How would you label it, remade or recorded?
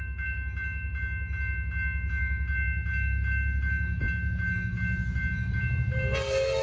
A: recorded